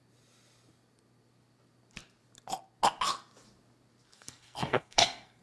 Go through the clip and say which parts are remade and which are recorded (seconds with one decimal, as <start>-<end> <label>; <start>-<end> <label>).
0.0-4.1 recorded; 4.1-5.4 remade